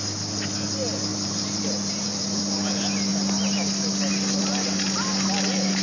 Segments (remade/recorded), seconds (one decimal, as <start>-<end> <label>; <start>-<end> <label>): 0.0-1.1 recorded; 1.1-2.4 remade; 2.4-5.8 recorded